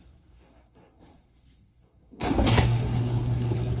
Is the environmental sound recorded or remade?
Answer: remade